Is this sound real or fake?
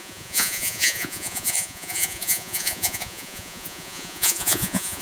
fake